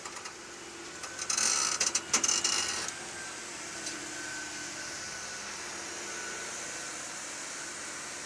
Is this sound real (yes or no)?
yes